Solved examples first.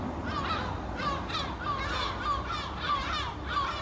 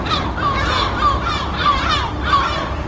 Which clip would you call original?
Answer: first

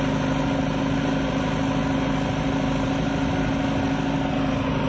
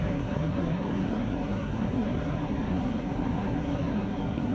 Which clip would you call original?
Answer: first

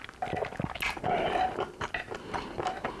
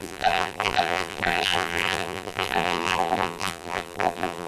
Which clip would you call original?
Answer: first